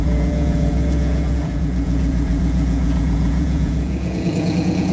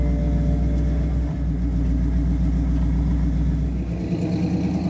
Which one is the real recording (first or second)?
second